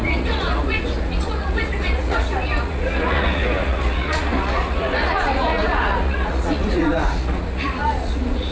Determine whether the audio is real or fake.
fake